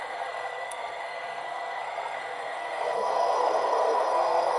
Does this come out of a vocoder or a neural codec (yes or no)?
yes